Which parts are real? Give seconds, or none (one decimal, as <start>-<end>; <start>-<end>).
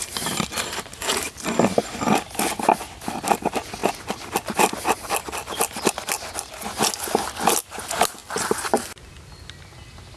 0.0-10.2